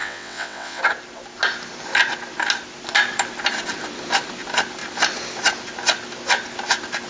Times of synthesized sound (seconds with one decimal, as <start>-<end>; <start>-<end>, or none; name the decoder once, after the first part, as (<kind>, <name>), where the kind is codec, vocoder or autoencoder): 0.0-0.8 (vocoder, WaveNeXt)